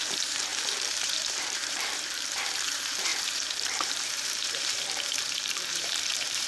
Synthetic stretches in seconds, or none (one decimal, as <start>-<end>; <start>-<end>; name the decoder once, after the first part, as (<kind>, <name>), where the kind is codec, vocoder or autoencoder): 0.0-6.5 (vocoder, BigVGAN v2)